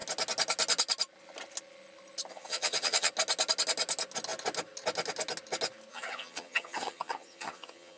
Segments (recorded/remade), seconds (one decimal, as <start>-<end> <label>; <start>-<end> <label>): 0.0-2.3 recorded; 2.3-3.1 remade; 3.1-5.9 recorded; 5.9-8.0 remade